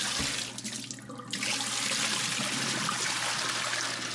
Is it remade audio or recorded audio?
recorded